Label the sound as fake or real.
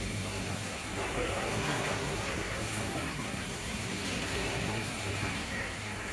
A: fake